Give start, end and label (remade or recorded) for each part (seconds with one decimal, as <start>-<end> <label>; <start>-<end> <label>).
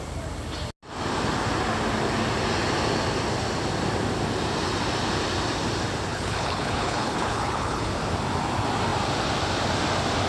0.0-6.1 recorded; 6.1-7.9 remade; 7.9-10.3 recorded